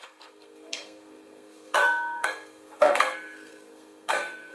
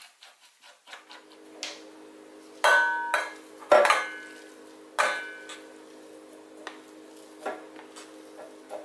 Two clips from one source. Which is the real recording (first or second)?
second